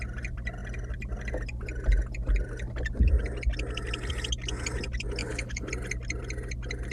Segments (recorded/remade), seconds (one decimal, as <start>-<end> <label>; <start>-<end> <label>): 0.0-5.2 recorded; 5.2-5.7 remade; 5.7-6.9 recorded